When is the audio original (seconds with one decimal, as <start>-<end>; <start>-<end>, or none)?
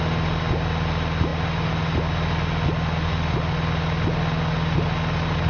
0.0-5.5